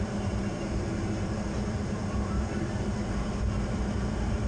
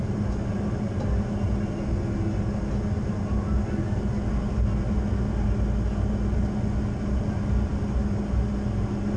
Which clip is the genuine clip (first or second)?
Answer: second